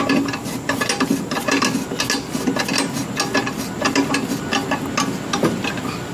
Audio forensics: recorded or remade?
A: recorded